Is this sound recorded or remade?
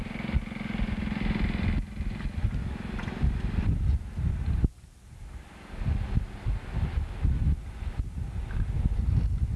recorded